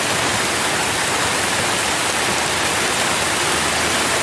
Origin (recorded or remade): recorded